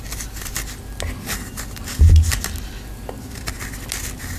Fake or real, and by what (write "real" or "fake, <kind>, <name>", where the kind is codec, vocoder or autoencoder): real